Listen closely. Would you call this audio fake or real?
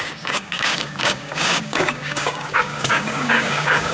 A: fake